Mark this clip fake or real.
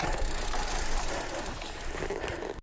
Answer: real